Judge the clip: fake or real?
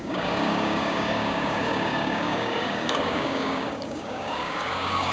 fake